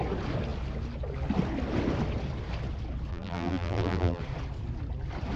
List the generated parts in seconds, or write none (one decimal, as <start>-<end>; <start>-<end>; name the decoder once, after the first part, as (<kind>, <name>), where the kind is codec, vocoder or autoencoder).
3.1-4.2 (vocoder, BigVGAN v2)